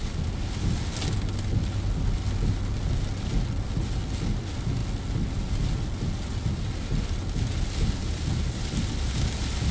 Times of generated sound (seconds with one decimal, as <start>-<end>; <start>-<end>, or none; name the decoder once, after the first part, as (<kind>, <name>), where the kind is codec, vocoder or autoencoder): none

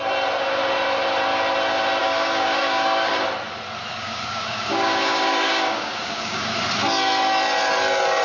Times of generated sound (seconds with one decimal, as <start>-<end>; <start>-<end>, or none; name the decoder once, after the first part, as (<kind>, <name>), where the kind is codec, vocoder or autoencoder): 2.0-3.1 (codec, DAC); 3.9-6.6

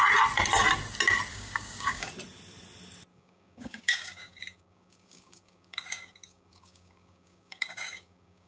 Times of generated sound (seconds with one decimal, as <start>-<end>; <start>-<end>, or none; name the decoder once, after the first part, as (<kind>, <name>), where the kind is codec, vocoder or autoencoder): 1.3-2.1 (codec, DAC); 3.1-8.5